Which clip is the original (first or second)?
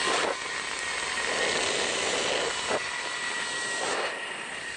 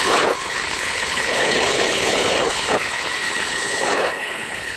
first